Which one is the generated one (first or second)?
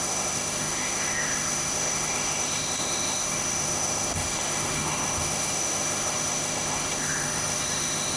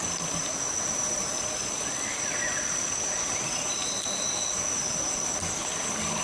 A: first